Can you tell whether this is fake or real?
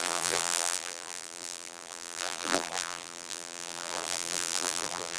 fake